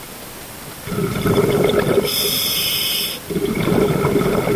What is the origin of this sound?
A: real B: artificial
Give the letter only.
A